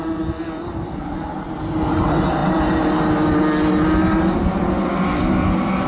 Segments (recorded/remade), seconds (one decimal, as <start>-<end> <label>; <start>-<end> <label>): 0.0-5.9 recorded